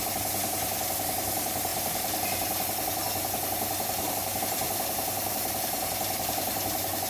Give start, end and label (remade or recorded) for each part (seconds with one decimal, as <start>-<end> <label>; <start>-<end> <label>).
0.0-7.1 remade